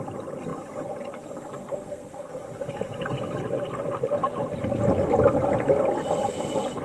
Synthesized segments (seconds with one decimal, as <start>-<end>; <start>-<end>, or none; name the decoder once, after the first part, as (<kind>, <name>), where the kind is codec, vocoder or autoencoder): 1.6-2.3 (codec, SNAC)